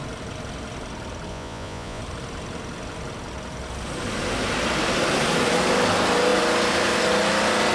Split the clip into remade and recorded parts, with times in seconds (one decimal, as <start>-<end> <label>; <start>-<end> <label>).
0.0-1.3 recorded; 1.3-2.0 remade; 2.0-7.7 recorded